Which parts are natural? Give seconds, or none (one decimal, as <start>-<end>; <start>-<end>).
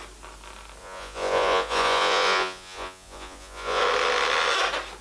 0.0-0.8; 3.8-5.0